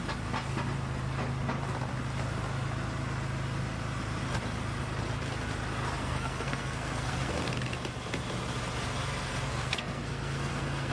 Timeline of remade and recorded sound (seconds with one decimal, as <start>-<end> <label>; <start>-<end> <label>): 0.0-5.8 recorded; 5.8-7.5 remade; 7.5-9.5 recorded; 9.5-10.9 remade